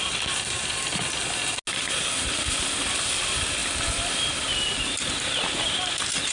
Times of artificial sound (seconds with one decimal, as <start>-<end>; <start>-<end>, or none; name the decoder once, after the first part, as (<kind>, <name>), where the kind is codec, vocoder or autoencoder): none